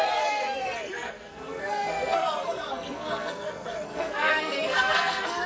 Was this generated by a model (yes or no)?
yes